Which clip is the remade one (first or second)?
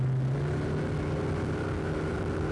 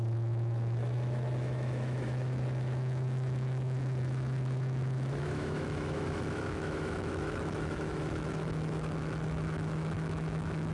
second